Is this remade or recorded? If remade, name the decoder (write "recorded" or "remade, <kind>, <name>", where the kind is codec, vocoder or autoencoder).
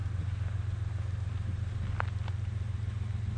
recorded